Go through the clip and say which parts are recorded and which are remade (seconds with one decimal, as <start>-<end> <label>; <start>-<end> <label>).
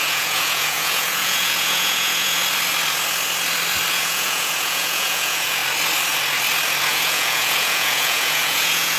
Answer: 0.0-2.4 remade; 2.4-3.9 recorded; 3.9-5.6 remade; 5.6-6.9 recorded; 6.9-9.0 remade